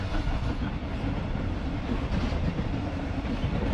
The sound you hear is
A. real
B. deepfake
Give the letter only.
A